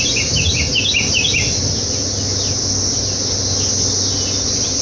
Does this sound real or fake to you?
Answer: real